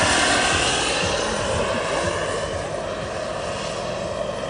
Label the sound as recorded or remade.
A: recorded